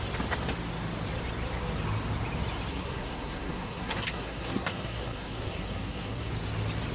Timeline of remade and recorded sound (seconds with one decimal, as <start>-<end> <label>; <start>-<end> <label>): 0.0-2.7 recorded; 2.7-6.3 remade; 6.3-6.9 recorded